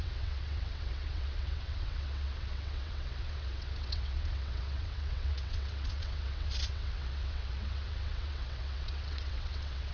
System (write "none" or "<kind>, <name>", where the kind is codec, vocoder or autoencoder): vocoder, WaveNeXt